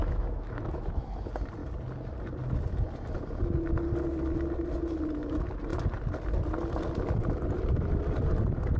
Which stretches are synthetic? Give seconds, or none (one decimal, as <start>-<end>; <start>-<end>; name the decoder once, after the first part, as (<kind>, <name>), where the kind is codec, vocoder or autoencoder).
0.0-1.2 (autoencoder, DAC-VAE)